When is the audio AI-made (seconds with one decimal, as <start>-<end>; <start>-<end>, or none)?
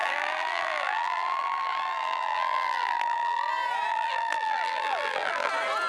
0.0-3.5; 3.9-5.5